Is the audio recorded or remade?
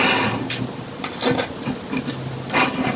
recorded